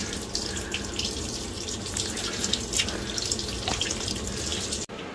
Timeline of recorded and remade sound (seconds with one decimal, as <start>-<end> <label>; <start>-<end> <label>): 0.0-5.1 recorded